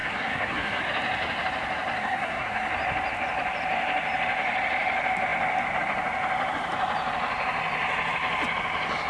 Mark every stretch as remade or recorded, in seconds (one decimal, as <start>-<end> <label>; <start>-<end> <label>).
0.0-0.8 remade; 0.8-2.0 recorded; 2.0-2.7 remade; 2.7-9.1 recorded